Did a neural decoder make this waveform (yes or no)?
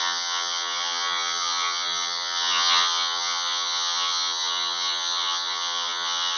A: yes